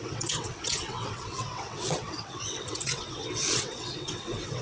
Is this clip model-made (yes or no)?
yes